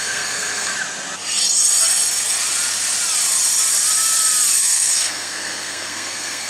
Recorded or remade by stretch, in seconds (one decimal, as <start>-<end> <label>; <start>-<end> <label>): 0.0-0.7 remade; 0.7-4.6 recorded; 4.6-6.5 remade